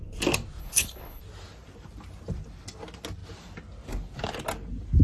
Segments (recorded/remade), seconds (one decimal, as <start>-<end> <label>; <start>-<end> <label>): 0.0-0.6 recorded; 0.6-1.2 remade; 1.2-5.0 recorded